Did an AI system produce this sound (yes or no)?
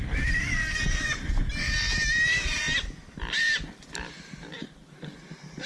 yes